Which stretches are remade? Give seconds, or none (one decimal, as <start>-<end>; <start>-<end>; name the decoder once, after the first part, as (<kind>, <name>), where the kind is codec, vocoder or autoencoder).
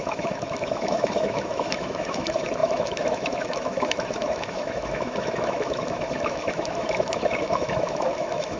0.0-8.6 (autoencoder, DAC-VAE)